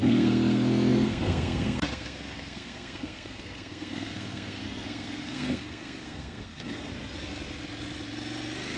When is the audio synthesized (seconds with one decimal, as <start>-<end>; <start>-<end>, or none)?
0.0-6.9